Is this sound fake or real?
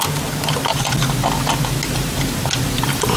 real